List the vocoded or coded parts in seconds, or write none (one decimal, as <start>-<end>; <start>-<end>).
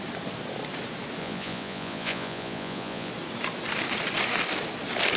1.2-3.1